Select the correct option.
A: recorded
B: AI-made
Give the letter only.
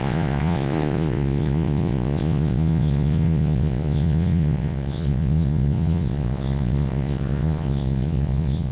B